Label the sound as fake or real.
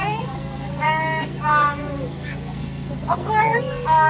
fake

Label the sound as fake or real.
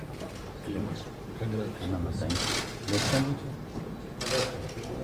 real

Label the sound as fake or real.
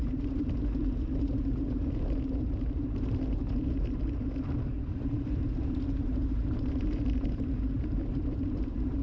fake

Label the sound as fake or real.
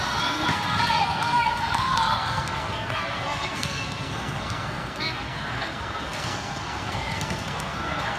fake